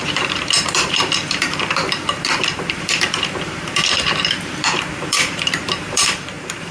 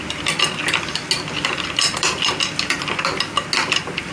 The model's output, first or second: first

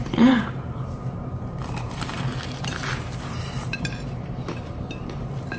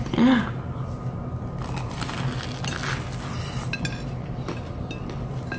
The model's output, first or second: first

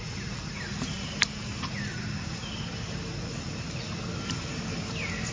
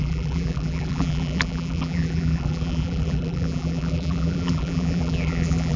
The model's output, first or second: second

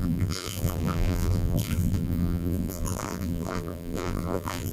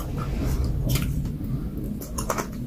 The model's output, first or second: first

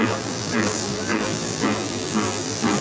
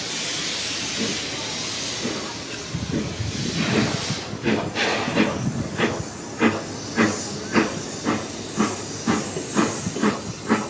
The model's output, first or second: first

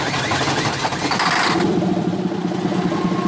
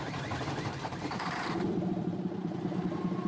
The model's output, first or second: second